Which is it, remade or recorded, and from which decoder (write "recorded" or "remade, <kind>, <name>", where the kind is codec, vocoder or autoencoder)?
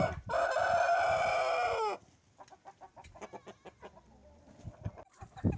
recorded